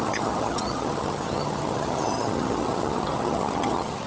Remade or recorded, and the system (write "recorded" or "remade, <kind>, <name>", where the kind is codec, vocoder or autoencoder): remade, vocoder, HiFi-GAN